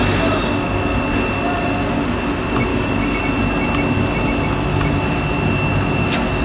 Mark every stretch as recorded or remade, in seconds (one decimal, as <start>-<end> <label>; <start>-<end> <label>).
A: 0.0-2.7 recorded; 2.7-3.2 remade; 3.2-6.4 recorded